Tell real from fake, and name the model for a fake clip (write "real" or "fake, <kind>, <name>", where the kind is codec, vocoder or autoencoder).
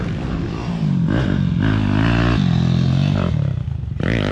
real